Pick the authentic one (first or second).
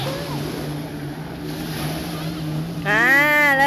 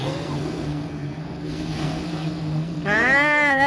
first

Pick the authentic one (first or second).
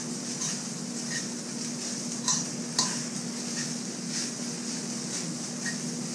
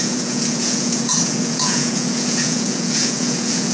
first